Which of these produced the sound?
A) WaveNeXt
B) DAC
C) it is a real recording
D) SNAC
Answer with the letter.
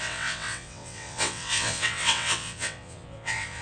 A